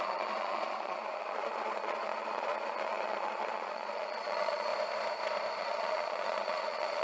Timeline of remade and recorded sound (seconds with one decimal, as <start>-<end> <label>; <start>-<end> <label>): 0.0-4.7 remade; 4.7-5.6 recorded; 5.6-7.0 remade